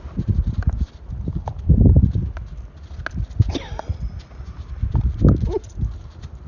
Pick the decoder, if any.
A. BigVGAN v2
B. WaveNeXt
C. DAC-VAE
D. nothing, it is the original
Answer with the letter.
D